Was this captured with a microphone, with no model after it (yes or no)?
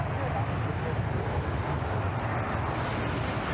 yes